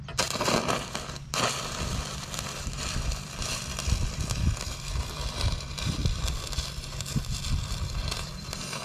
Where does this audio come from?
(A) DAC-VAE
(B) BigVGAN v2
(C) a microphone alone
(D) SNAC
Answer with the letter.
B